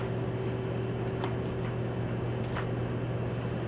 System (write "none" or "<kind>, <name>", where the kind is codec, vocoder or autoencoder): none